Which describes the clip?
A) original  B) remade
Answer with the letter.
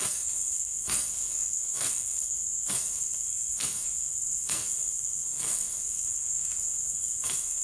B